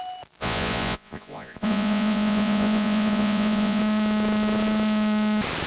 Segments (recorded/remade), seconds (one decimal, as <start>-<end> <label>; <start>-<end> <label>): 0.0-0.4 recorded; 0.4-3.8 remade; 3.8-5.7 recorded